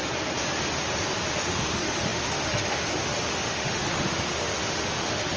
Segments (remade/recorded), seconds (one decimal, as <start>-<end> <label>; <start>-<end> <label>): 0.0-1.4 recorded; 1.4-5.4 remade